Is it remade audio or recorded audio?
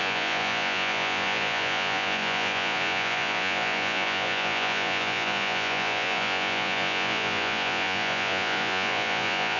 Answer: remade